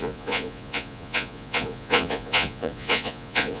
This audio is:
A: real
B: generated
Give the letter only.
B